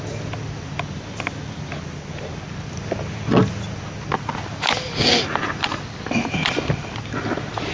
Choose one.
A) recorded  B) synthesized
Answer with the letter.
A